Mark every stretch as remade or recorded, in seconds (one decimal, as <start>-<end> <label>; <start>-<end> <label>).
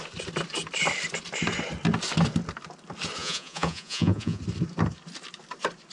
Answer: 0.0-3.2 recorded; 3.2-4.4 remade; 4.4-5.9 recorded